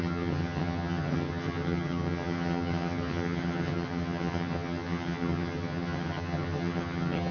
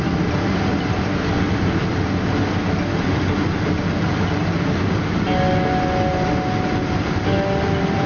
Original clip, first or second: second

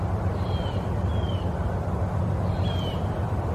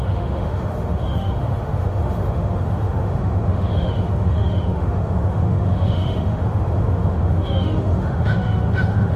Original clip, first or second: first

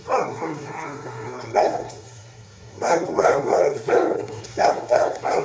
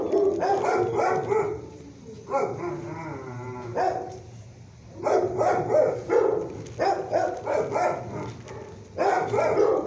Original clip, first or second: second